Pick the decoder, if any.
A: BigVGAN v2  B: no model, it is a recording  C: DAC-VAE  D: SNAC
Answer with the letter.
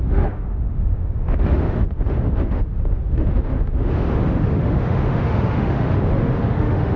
C